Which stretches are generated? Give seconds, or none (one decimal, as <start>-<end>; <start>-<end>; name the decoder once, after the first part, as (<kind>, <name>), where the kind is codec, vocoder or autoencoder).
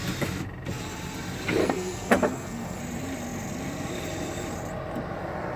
1.6-2.8 (codec, SNAC)